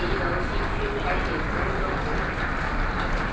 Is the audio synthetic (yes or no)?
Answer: no